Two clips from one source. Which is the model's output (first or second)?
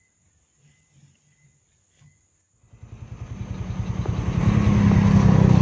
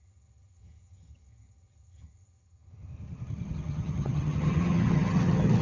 second